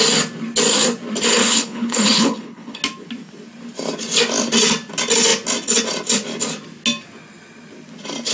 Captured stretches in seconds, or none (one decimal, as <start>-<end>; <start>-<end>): 0.0-1.3; 2.8-8.3